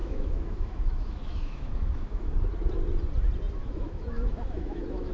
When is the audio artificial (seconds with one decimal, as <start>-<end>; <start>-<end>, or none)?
0.0-2.3; 3.6-5.1